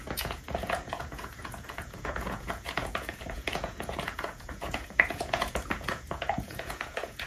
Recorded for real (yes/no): no